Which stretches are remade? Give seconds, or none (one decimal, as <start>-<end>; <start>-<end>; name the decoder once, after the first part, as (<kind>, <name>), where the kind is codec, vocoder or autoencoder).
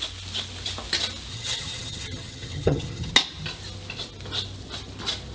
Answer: 1.3-3.1 (vocoder, HiFi-GAN)